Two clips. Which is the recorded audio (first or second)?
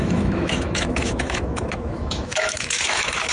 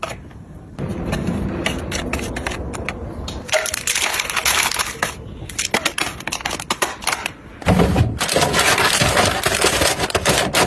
second